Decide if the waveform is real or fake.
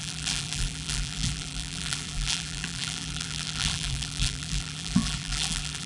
fake